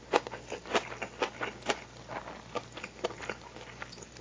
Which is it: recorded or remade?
recorded